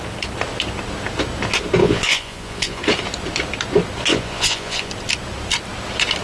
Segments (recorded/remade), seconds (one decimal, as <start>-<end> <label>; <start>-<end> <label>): 0.0-1.8 recorded; 1.8-2.8 remade; 2.8-4.1 recorded; 4.1-4.9 remade; 4.9-6.2 recorded